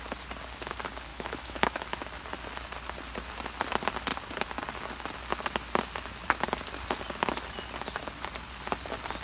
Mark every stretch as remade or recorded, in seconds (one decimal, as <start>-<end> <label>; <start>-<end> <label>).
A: 0.0-1.1 recorded; 1.1-2.0 remade; 2.0-9.2 recorded